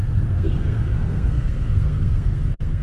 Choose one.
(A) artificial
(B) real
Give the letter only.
A